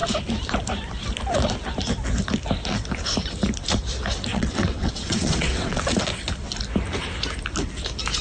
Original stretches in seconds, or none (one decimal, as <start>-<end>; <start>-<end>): 0.0-4.3; 5.8-8.2